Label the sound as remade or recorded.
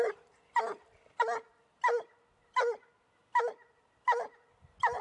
recorded